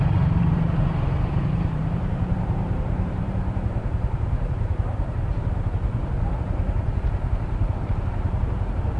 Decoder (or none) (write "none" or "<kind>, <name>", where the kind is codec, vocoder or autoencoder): vocoder, BigVGAN v2